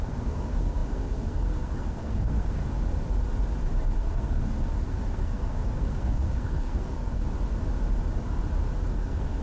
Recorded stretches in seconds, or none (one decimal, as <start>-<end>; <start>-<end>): 2.6-4.0; 7.2-8.9